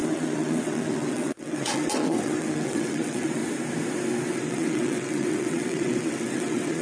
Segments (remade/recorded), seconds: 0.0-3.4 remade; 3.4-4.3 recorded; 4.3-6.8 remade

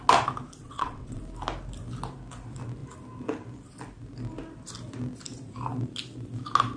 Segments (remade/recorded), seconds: 0.0-0.6 recorded; 0.6-1.2 remade; 1.2-6.8 recorded

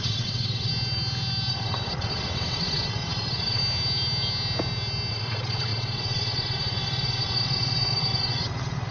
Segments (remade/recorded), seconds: 0.0-0.7 remade; 0.7-1.5 recorded; 1.5-3.6 remade; 3.6-5.1 recorded; 5.1-8.9 remade

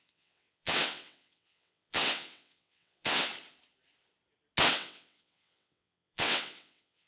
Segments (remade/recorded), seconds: 0.0-3.3 remade; 3.3-4.7 recorded; 4.7-7.1 remade

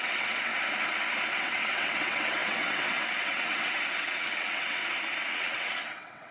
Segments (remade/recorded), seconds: 0.0-0.5 remade; 0.5-1.2 recorded; 1.2-4.8 remade; 4.8-5.3 recorded; 5.3-6.3 remade

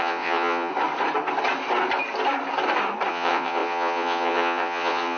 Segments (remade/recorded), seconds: 0.0-0.7 remade; 0.7-3.1 recorded; 3.1-5.2 remade

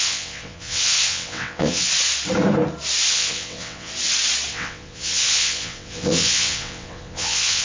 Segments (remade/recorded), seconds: 0.0-1.9 remade; 1.9-3.1 recorded; 3.1-3.9 remade; 3.9-4.5 recorded; 4.5-7.6 remade